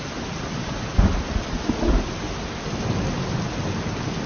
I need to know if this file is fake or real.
real